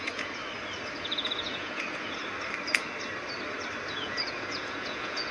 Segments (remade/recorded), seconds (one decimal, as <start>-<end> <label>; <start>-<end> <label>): 0.0-0.4 remade; 0.4-1.0 recorded; 1.0-2.2 remade; 2.2-3.9 recorded; 3.9-5.3 remade